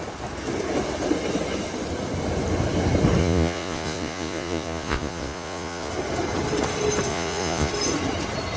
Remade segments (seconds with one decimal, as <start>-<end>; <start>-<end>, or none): 3.2-5.9; 7.1-7.7